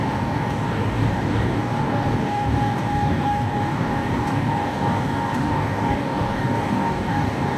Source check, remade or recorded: remade